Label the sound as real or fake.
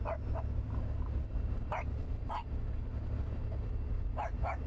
real